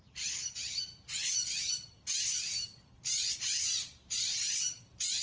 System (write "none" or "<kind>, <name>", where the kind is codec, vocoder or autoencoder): vocoder, BigVGAN v2